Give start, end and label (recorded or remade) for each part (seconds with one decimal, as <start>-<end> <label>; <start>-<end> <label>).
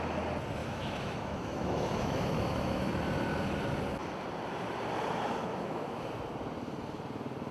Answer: 0.0-0.6 recorded; 0.6-2.9 remade; 2.9-5.4 recorded; 5.4-6.1 remade; 6.1-7.5 recorded